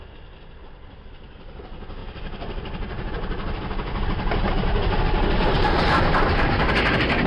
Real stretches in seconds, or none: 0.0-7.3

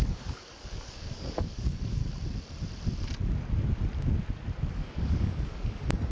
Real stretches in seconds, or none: 2.0-4.7